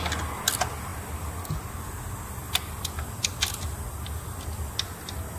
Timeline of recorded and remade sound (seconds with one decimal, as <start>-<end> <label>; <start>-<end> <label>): 0.0-5.4 recorded

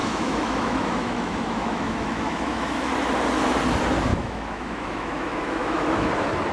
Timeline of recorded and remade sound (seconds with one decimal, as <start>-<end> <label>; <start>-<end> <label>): 0.0-2.9 remade; 2.9-4.1 recorded; 4.1-6.1 remade; 6.1-6.5 recorded